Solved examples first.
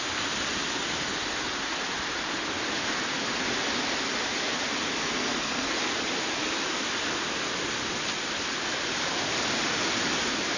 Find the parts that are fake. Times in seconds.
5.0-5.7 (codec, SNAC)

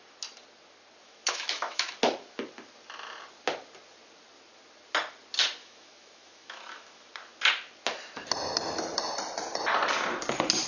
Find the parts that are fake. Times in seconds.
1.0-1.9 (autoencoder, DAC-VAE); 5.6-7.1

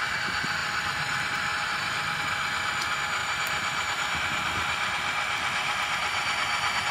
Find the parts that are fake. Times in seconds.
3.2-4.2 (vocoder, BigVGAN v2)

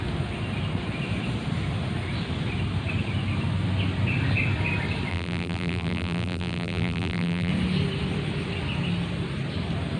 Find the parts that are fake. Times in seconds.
5.1-7.5 (vocoder, BigVGAN v2)

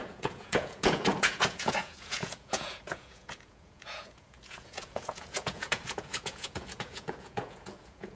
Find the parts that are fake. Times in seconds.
0.0-8.2 (vocoder, Vocos)